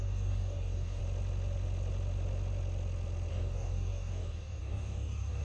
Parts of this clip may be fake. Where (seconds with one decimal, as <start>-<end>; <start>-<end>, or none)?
0.0-1.0; 3.3-5.4